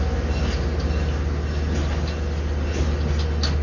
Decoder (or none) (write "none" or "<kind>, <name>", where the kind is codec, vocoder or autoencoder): none